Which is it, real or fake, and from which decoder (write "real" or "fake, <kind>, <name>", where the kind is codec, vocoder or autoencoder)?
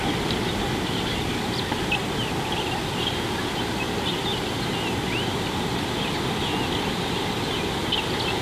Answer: real